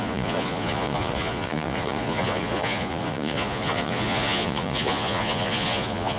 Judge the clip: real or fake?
fake